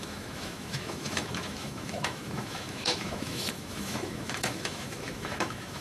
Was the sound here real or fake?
fake